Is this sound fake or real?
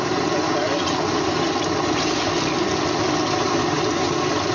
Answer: real